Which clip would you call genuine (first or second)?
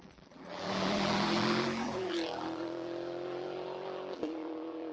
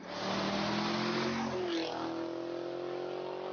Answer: second